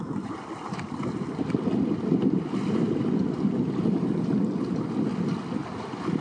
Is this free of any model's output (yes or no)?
yes